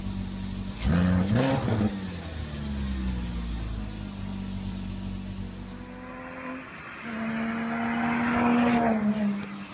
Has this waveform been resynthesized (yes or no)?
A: no